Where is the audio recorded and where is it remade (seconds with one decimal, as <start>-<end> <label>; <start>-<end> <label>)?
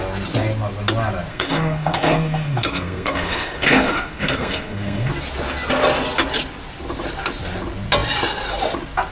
0.0-1.3 recorded; 1.3-5.1 remade; 5.1-9.1 recorded